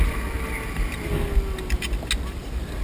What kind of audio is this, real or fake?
real